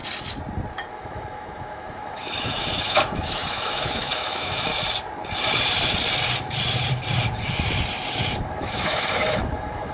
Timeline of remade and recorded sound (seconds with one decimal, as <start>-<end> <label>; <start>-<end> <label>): 0.0-0.7 recorded; 0.7-4.7 remade; 4.7-8.5 recorded; 8.5-9.9 remade